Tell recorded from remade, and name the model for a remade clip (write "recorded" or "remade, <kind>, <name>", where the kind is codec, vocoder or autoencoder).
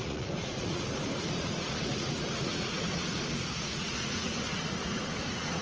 remade, vocoder, Vocos